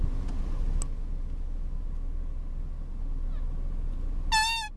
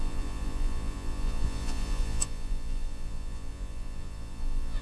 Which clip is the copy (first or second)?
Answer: second